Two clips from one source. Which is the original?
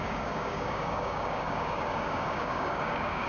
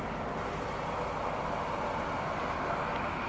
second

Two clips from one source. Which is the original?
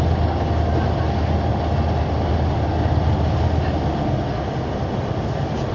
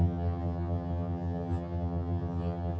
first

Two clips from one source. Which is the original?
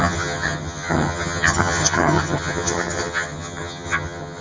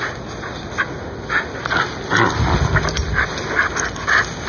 second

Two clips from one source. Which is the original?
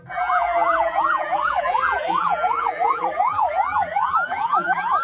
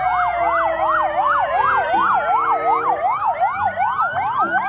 second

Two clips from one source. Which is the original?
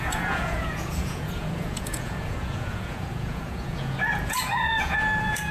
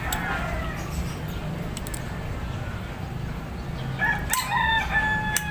second